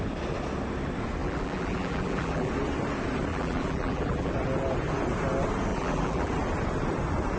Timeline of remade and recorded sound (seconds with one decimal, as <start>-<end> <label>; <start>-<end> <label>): 0.0-1.2 recorded; 1.2-2.5 remade; 2.5-3.3 recorded; 3.3-4.3 remade; 4.3-5.7 recorded; 5.7-6.3 remade; 6.3-7.4 recorded